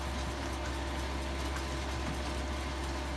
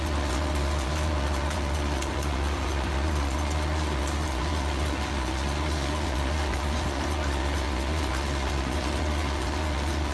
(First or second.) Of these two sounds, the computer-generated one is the second